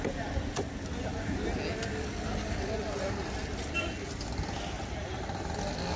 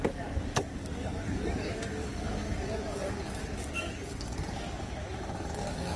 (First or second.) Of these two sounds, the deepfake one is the second